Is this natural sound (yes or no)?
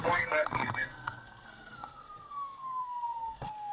no